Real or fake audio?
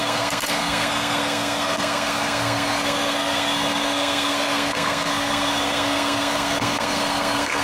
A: fake